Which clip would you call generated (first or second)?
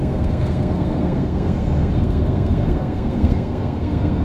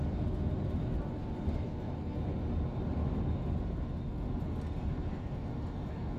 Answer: first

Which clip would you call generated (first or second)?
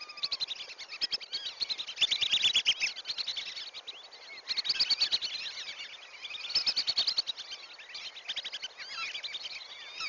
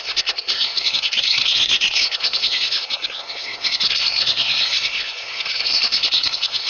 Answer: second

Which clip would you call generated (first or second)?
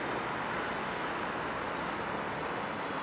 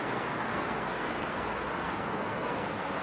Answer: second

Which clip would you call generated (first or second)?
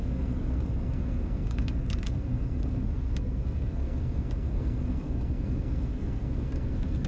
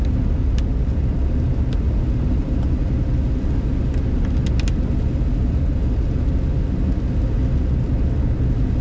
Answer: first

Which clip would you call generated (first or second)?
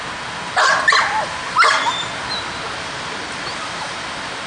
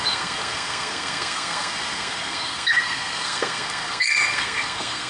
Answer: second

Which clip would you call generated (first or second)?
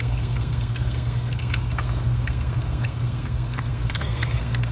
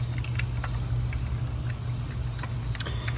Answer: first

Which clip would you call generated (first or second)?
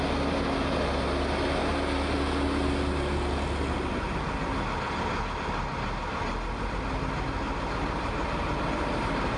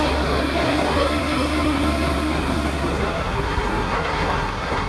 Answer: second